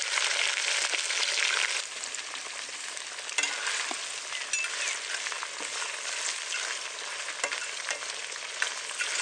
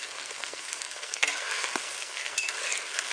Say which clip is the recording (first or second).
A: first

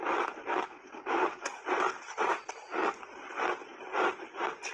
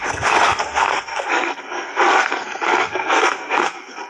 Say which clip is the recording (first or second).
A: first